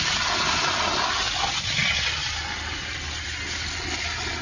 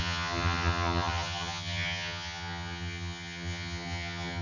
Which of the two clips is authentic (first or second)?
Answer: first